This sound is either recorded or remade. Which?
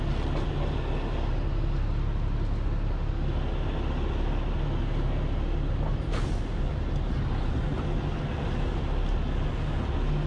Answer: recorded